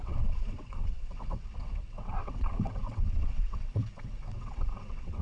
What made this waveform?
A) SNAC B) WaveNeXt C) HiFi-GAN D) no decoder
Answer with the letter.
B